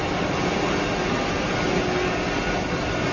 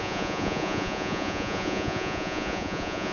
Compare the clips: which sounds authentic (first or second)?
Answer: first